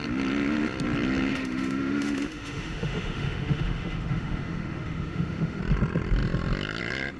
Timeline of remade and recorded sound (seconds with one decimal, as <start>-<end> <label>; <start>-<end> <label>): 0.0-1.3 recorded; 1.3-5.6 remade; 5.6-7.2 recorded